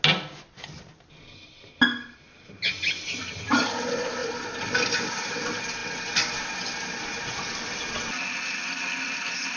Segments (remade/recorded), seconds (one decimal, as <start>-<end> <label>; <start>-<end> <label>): 0.0-9.6 recorded